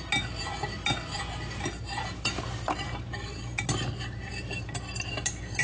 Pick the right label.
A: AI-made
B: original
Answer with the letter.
B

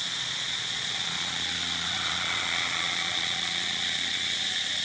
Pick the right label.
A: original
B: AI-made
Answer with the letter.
B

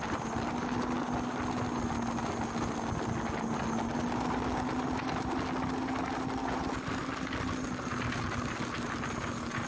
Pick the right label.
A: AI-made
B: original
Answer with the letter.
B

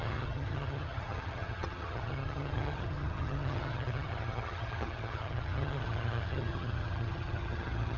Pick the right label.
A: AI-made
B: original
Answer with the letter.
A